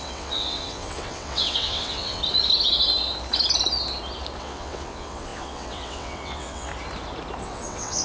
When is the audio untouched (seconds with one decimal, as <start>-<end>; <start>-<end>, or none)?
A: 2.2-4.4; 6.7-7.4